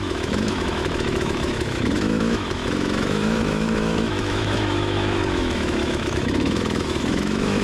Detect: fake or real fake